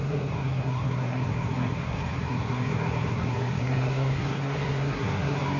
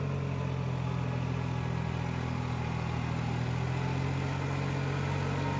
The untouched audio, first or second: second